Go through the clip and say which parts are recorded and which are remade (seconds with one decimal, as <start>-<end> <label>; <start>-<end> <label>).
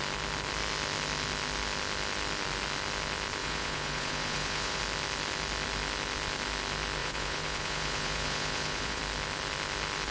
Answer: 0.0-3.4 recorded; 3.4-4.8 remade; 4.8-7.0 recorded; 7.0-9.0 remade; 9.0-10.1 recorded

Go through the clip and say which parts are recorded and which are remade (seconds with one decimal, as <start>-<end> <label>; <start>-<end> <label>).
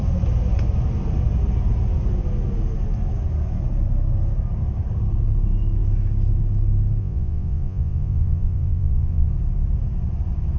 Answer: 0.0-7.0 recorded; 7.0-9.3 remade; 9.3-10.6 recorded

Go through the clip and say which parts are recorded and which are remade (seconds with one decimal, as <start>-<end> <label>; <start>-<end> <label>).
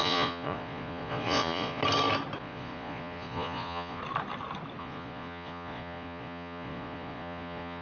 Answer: 0.0-1.8 remade; 1.8-2.4 recorded; 2.4-4.0 remade; 4.0-4.8 recorded; 4.8-7.8 remade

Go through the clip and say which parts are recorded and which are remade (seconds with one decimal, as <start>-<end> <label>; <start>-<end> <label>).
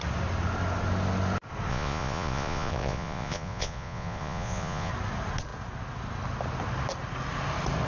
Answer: 0.0-1.7 recorded; 1.7-4.9 remade; 4.9-7.9 recorded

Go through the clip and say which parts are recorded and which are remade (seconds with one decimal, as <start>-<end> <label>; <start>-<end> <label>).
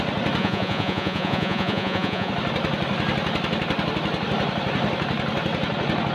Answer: 0.0-0.4 recorded; 0.4-2.3 remade; 2.3-6.1 recorded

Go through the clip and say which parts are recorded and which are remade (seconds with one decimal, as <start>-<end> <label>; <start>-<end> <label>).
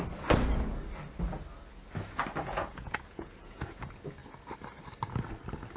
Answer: 0.0-2.4 recorded; 2.4-3.8 remade; 3.8-5.8 recorded